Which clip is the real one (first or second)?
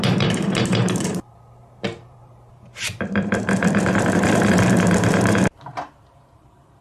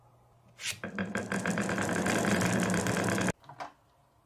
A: second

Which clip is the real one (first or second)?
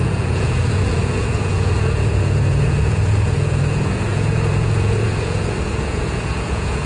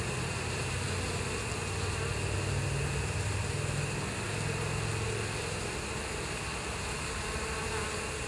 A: second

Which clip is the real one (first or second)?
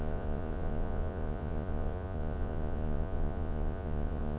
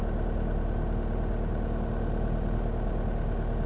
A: second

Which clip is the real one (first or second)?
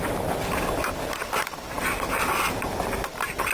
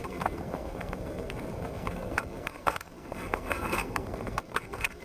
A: first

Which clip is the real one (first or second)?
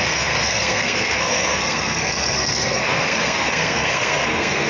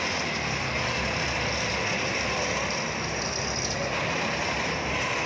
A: second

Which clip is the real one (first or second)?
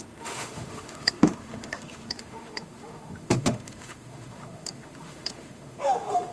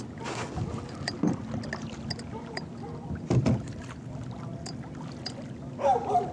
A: second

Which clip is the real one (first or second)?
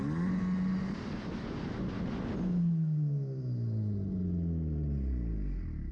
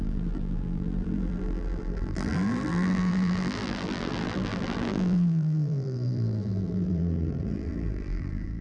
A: first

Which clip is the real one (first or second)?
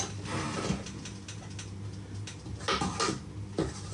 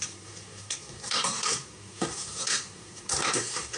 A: first